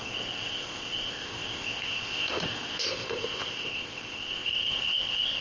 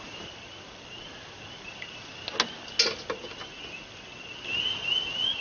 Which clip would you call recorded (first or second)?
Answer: second